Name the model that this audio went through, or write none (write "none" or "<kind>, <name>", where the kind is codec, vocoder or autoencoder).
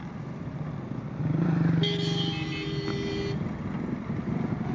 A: none